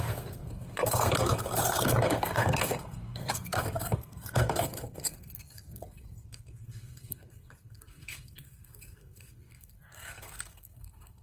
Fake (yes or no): yes